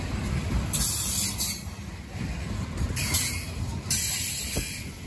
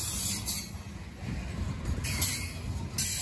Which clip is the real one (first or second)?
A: second